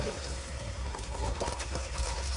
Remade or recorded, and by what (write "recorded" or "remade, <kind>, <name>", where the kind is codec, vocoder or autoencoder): remade, codec, SNAC